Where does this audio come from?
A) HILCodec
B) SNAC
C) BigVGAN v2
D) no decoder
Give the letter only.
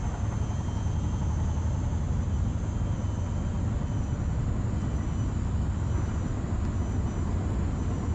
D